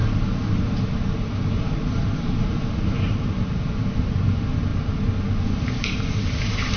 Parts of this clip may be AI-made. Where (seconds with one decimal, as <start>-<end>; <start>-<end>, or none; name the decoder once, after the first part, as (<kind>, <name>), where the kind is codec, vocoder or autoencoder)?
0.0-4.7 (vocoder, BigVGAN v2); 5.6-6.8